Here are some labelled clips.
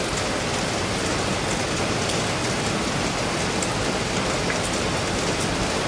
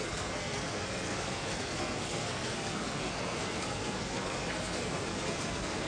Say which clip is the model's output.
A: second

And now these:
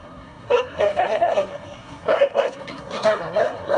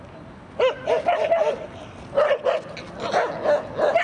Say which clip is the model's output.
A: first